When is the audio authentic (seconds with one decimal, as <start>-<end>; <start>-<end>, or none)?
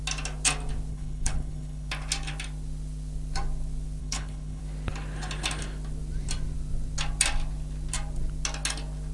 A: 0.0-0.9; 1.9-4.0; 4.6-9.1